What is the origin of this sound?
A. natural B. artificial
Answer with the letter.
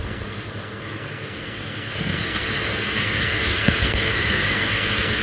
B